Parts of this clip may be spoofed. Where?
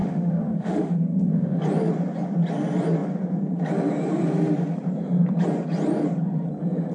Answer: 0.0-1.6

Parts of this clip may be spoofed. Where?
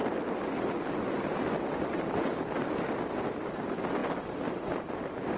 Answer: none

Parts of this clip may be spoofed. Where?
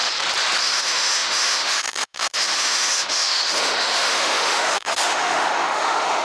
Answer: 0.6-6.2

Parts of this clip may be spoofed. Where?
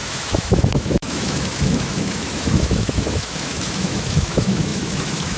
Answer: 0.0-5.4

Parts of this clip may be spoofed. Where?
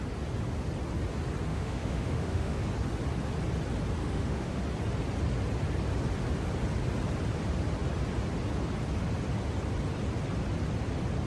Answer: 1.5-2.6; 4.0-4.6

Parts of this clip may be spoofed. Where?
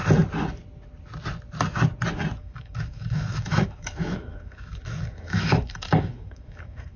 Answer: 2.4-7.0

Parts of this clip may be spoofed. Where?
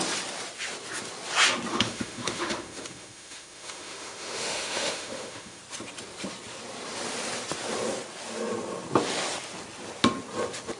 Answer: 1.7-5.6